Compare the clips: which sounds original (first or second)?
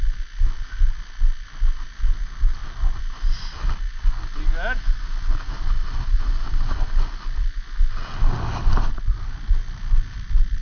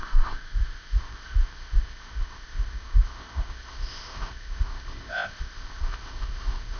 first